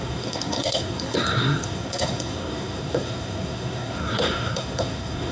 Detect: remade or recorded remade